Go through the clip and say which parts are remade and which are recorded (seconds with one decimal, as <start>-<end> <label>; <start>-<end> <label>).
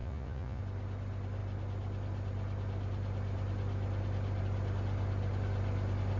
0.0-0.6 remade; 0.6-6.2 recorded